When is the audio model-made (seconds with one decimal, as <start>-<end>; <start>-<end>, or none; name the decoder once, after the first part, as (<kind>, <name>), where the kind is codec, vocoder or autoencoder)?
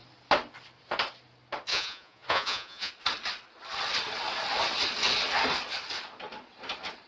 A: 1.7-2.9 (vocoder, Vocos)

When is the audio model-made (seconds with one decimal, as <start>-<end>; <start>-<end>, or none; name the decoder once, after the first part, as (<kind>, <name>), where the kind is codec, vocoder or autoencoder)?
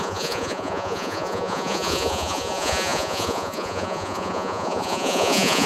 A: 0.0-5.7 (vocoder, Vocos)